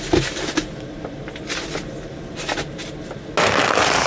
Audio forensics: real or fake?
real